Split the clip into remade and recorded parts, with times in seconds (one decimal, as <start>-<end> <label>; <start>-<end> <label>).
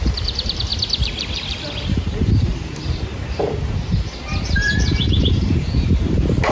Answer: 0.0-0.7 remade; 0.7-1.9 recorded; 1.9-6.5 remade